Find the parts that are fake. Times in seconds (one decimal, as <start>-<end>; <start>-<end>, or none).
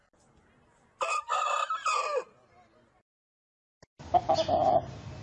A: 3.7-4.2